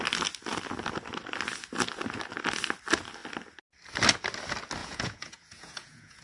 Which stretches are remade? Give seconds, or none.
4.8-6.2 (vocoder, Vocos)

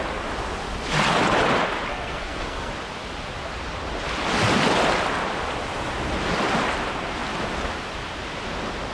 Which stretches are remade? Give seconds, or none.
1.9-2.7 (codec, SNAC)

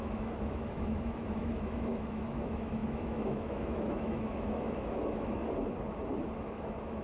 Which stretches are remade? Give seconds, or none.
0.0-5.4 (autoencoder, DAC-VAE); 6.4-7.0

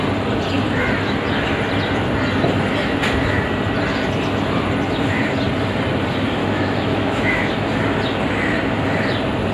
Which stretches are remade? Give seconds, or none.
6.4-7.5 (autoencoder, DAC-VAE)

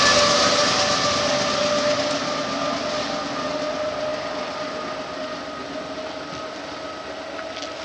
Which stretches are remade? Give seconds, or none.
none